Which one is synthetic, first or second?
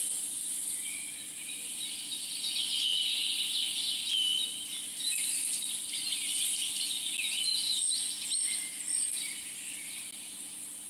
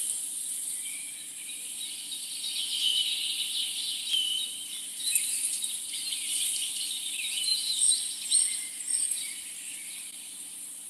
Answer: second